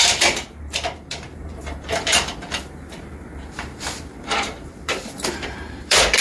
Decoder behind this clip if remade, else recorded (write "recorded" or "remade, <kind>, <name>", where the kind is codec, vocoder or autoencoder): remade, vocoder, BigVGAN v2